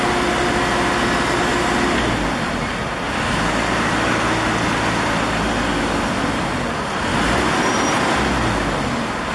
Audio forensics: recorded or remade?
recorded